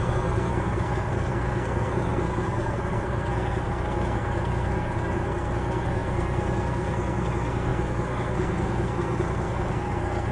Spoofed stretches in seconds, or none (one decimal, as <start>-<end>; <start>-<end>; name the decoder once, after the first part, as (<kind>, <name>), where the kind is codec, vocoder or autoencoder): 0.0-10.3 (codec, SNAC)